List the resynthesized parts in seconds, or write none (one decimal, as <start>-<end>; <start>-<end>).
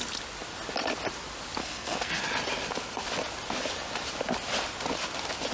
1.6-2.2